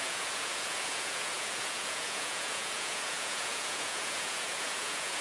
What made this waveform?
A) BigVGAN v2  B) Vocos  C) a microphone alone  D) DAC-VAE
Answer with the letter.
B